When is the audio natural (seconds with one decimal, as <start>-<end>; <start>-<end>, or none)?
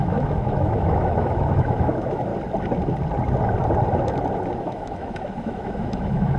2.3-4.6